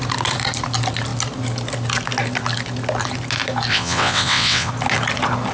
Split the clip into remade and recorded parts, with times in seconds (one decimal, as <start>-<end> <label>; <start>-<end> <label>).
0.0-3.7 recorded; 3.7-4.7 remade; 4.7-5.5 recorded